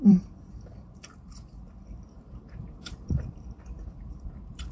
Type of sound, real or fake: fake